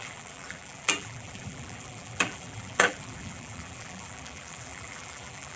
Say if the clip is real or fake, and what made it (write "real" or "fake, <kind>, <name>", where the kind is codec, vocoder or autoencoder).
fake, vocoder, BigVGAN v2